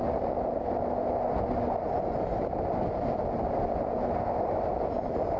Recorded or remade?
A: recorded